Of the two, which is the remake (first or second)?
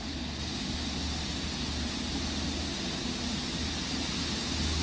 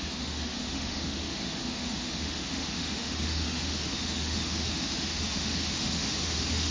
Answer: second